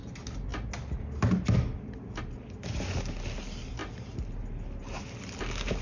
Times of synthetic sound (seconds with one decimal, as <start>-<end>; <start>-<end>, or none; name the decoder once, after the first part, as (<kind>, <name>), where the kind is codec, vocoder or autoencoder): none